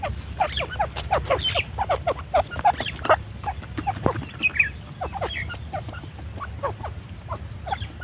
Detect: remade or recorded recorded